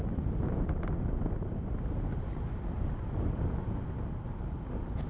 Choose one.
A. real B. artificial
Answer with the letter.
A